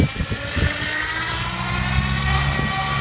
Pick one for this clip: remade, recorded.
recorded